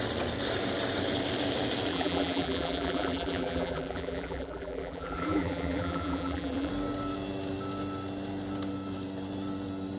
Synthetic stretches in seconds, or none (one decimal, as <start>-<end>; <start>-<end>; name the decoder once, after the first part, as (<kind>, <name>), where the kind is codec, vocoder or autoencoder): 1.9-6.7 (vocoder, BigVGAN v2)